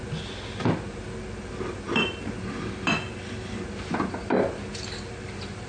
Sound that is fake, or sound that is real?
fake